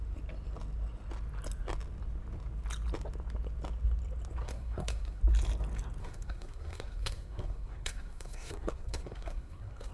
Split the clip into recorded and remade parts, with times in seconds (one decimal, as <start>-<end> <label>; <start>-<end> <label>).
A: 0.0-4.4 recorded; 4.4-5.2 remade; 5.2-6.0 recorded; 6.0-9.9 remade